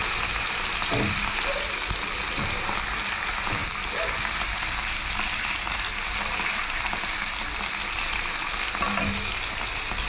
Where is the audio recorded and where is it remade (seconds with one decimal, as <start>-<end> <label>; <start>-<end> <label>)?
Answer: 0.0-10.1 recorded

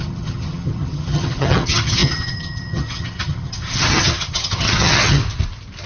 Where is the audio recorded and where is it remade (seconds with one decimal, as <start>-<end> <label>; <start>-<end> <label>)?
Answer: 0.0-5.2 remade; 5.2-5.9 recorded

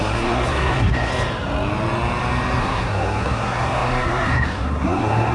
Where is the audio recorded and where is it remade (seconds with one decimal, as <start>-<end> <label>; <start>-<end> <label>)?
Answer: 0.0-1.1 remade; 1.1-2.6 recorded; 2.6-5.3 remade

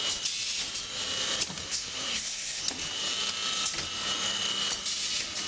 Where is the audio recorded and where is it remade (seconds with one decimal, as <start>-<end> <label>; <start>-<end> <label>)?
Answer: 0.0-1.6 recorded; 1.6-2.6 remade; 2.6-5.5 recorded